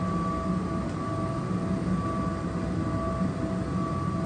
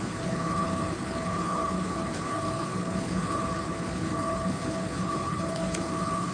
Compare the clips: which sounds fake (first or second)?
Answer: second